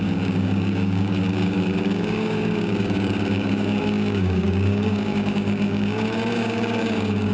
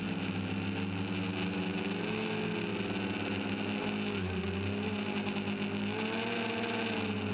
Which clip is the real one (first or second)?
second